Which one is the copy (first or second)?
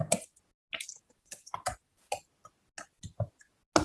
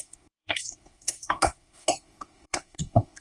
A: second